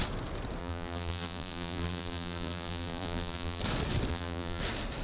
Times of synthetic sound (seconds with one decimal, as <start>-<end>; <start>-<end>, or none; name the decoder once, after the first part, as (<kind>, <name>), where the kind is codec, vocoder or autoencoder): 0.6-3.6 (vocoder, BigVGAN v2); 4.1-4.6